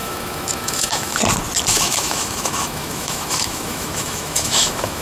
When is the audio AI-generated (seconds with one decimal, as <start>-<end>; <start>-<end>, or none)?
0.0-1.2; 1.7-5.0